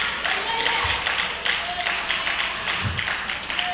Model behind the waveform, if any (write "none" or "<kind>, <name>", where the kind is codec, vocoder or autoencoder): none